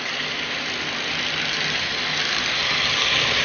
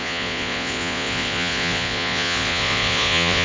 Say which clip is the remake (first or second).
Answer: second